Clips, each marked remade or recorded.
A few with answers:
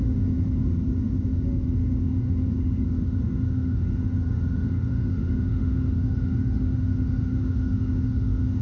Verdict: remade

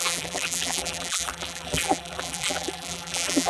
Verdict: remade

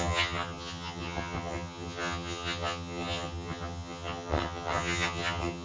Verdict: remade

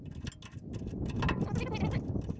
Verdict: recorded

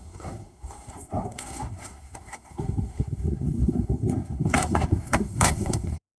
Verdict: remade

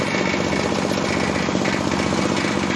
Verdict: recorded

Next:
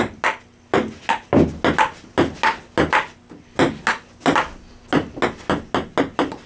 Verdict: recorded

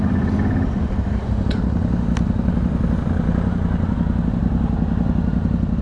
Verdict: recorded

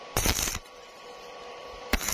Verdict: remade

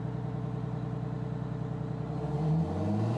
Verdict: recorded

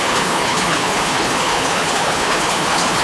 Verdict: remade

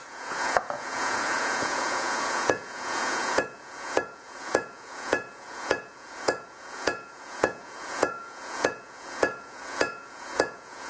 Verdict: remade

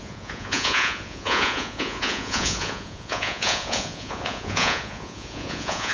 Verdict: remade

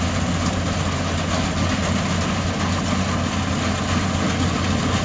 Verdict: recorded